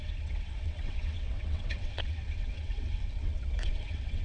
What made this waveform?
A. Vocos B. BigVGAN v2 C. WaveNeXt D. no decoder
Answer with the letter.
C